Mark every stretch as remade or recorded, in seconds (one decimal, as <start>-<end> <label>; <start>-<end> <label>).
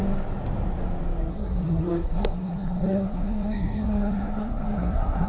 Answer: 0.0-1.3 recorded; 1.3-5.3 remade